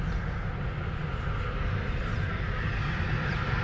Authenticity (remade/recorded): recorded